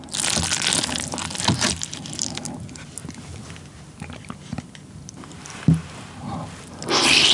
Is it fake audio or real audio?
real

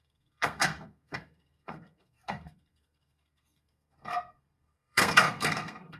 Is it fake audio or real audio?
fake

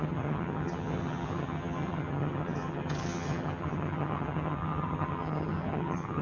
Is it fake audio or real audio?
fake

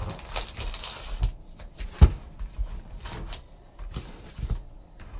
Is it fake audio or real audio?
real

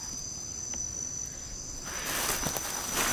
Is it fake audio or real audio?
real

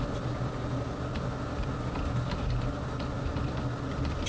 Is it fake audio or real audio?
real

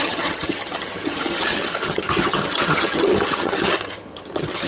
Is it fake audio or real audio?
fake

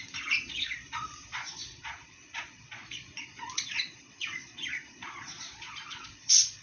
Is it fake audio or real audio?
fake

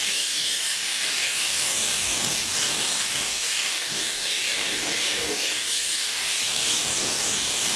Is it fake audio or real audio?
fake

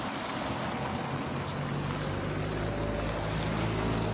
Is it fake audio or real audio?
real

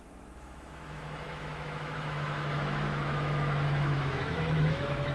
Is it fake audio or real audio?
fake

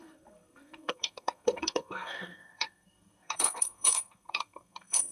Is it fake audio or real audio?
fake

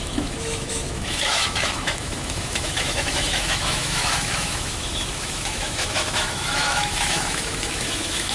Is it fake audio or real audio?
fake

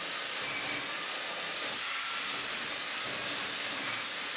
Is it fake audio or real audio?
real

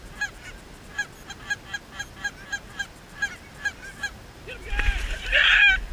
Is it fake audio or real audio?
real